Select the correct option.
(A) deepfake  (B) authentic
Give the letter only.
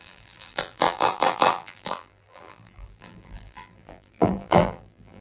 A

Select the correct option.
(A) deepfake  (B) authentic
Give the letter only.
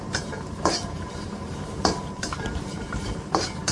A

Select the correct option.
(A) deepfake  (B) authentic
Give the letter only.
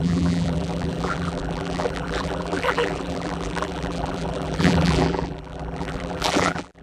A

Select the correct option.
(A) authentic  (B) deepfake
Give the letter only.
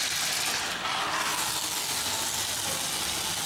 A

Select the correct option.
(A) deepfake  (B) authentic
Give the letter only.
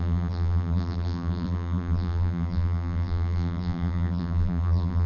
A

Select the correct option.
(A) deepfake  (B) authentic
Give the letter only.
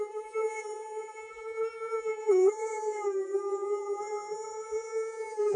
A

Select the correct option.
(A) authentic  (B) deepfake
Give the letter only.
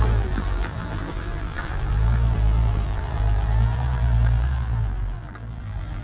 B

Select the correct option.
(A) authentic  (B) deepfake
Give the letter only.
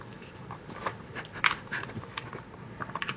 B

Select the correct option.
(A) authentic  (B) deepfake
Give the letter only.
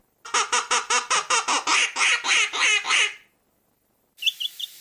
A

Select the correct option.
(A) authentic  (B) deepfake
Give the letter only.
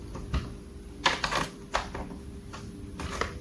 A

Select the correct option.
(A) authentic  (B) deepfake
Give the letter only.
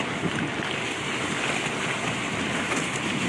A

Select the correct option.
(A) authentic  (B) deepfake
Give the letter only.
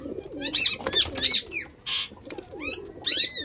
A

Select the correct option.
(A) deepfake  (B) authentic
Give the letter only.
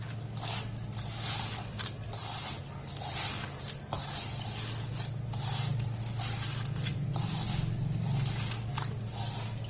B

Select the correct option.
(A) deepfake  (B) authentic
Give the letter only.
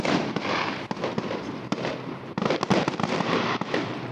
A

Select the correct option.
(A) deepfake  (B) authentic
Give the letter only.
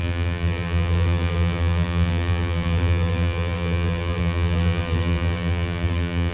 A